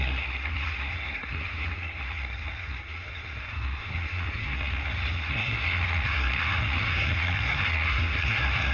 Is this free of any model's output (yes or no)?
no